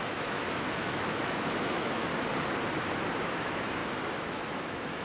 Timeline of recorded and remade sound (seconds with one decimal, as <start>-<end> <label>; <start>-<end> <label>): 0.0-2.1 remade; 2.1-3.2 recorded; 3.2-3.8 remade; 3.8-4.3 recorded; 4.3-5.0 remade